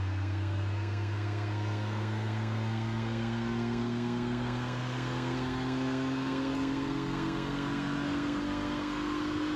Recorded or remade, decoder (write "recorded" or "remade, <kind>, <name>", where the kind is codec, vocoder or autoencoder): remade, codec, SNAC